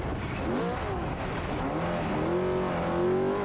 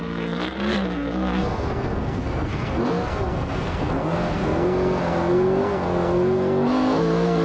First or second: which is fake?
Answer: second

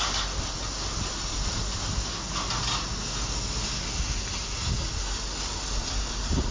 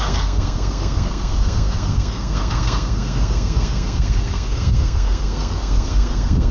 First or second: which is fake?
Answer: second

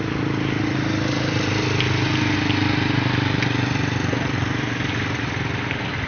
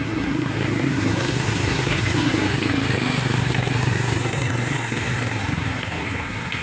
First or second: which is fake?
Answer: second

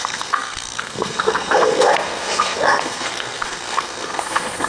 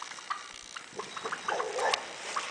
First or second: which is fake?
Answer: first